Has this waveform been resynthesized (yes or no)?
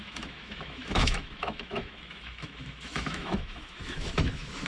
yes